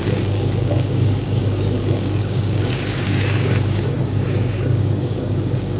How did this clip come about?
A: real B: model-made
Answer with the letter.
B